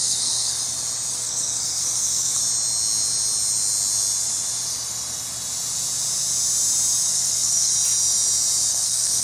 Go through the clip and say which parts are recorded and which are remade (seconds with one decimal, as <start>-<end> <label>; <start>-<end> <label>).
0.0-0.6 remade; 0.6-1.1 recorded; 1.1-2.4 remade; 2.4-7.1 recorded; 7.1-7.7 remade; 7.7-8.7 recorded; 8.7-9.2 remade